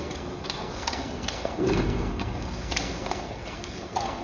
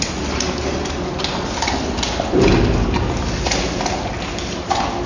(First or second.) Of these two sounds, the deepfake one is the first